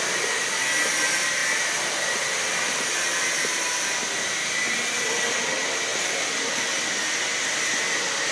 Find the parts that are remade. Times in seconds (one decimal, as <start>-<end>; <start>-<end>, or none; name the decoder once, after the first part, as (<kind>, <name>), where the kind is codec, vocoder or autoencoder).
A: none